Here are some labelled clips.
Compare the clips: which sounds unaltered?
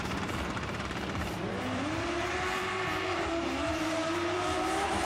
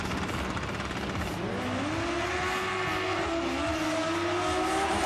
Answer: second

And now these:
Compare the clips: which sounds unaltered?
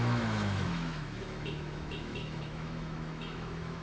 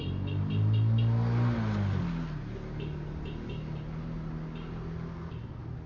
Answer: second